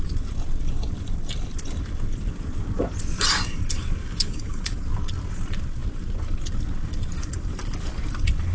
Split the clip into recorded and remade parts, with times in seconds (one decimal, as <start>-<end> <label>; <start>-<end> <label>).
0.0-4.0 recorded; 4.0-4.7 remade; 4.7-8.5 recorded